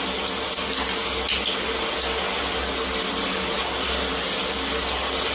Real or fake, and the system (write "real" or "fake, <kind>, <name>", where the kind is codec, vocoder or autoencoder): real